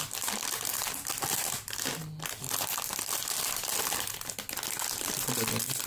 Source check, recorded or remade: recorded